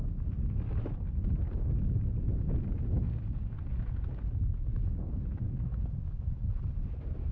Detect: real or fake real